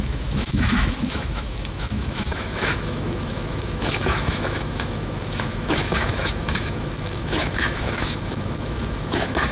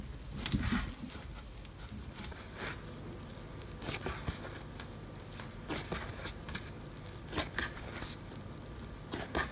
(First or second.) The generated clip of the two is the first